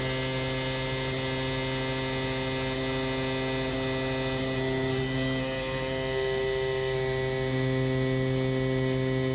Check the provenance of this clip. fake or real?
real